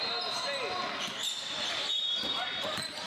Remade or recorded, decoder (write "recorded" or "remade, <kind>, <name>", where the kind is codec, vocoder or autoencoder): recorded